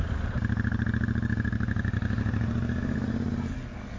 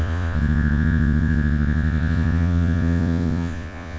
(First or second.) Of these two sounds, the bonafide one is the first